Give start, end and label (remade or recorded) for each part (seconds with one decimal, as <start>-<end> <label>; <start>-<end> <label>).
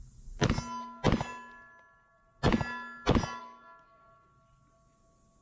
0.0-5.4 recorded